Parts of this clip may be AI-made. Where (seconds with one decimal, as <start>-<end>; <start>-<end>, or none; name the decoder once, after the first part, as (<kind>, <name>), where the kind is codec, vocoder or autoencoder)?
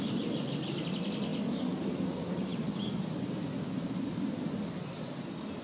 2.5-3.6 (vocoder, BigVGAN v2)